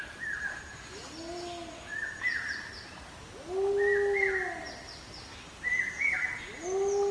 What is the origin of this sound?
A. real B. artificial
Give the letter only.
A